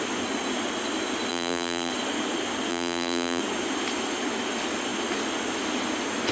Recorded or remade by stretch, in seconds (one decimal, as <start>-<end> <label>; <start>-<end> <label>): 0.0-1.3 recorded; 1.3-1.9 remade; 1.9-2.7 recorded; 2.7-3.4 remade; 3.4-6.3 recorded